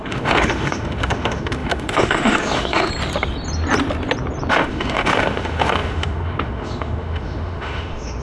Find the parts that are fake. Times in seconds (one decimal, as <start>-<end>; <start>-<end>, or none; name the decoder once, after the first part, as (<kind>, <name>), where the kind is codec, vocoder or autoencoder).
0.0-2.9 (autoencoder, DAC-VAE); 4.5-8.2